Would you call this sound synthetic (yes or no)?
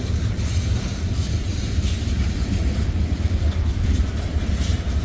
yes